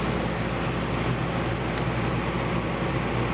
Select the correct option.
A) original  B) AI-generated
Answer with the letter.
A